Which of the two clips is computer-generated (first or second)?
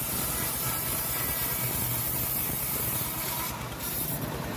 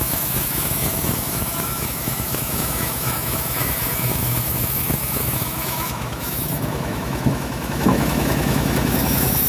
second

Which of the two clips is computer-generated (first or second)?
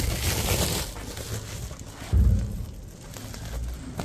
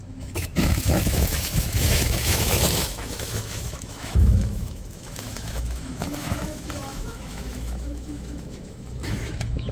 second